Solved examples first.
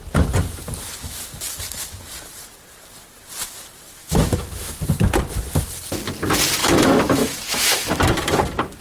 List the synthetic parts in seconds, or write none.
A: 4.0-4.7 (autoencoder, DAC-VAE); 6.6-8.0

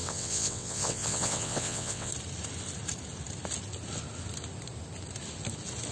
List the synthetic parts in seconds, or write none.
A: 0.0-2.1 (vocoder, WaveNeXt)

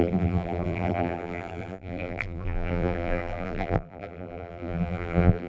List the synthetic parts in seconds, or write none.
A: 0.0-5.5 (vocoder, BigVGAN v2)

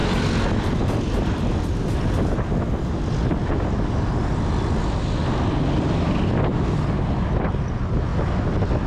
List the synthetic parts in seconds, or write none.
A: none

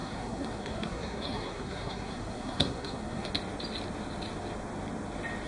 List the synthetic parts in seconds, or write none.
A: 0.0-3.3 (codec, SNAC)

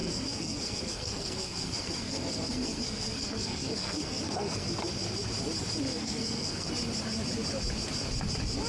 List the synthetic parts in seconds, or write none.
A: 0.0-4.8 (codec, SNAC); 5.9-6.7